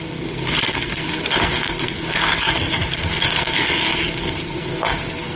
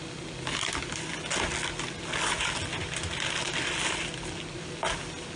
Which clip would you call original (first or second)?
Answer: second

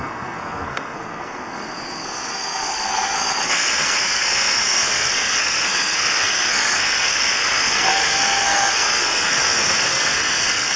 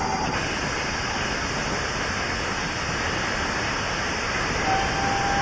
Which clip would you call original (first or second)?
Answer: second